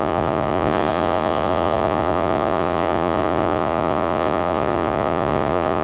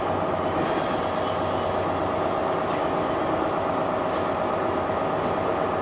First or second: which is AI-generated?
first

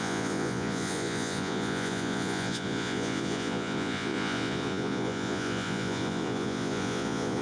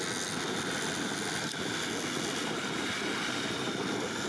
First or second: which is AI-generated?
first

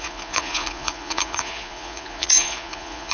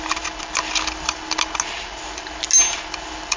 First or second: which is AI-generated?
first